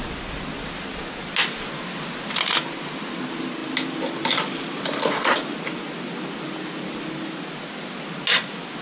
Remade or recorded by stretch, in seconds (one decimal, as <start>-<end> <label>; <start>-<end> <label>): 0.0-8.8 recorded